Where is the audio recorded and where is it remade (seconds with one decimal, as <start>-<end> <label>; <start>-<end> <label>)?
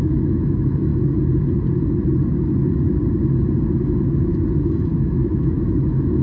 0.0-0.9 remade; 0.9-4.6 recorded; 4.6-6.2 remade